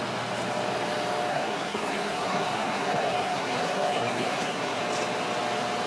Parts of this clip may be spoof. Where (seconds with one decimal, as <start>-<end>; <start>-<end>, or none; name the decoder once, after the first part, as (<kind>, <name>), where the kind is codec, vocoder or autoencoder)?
1.3-4.8 (codec, SNAC)